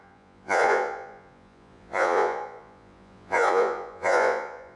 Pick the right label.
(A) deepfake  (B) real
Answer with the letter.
A